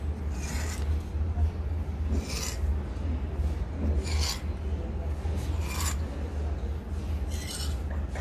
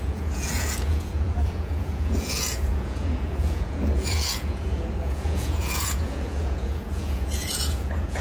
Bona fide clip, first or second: first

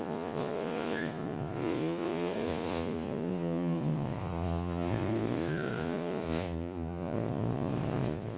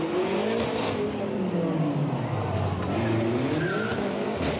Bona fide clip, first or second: second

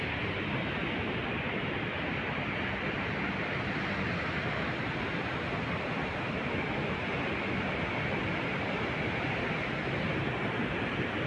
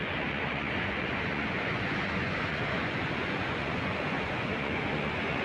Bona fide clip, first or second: first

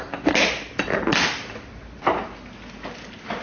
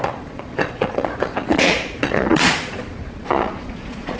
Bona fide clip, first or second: first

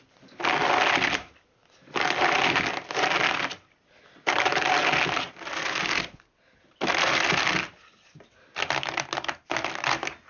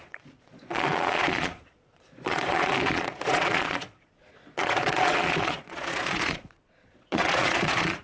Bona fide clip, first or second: first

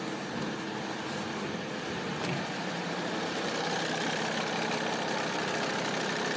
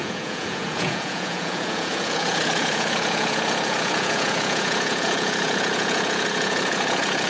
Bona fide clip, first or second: first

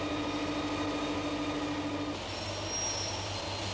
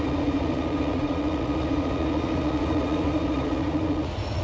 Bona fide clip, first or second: first